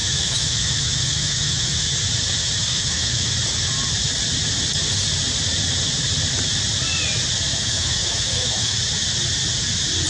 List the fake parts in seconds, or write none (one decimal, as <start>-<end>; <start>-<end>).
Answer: 0.0-1.9; 2.7-3.3; 7.5-8.8